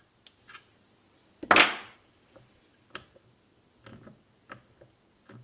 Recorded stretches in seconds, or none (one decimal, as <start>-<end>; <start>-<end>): 0.0-5.4